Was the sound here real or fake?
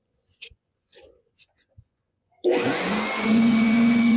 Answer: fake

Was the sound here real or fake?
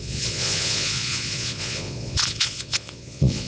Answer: fake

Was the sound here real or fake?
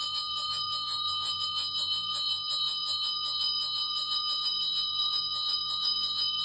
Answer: fake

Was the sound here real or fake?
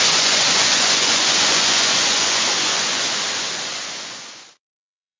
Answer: fake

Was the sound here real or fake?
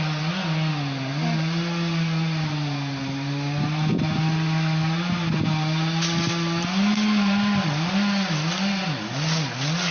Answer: real